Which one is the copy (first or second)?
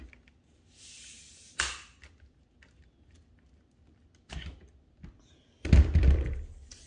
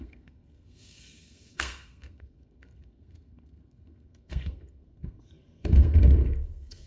second